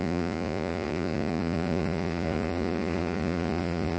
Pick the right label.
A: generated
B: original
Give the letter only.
A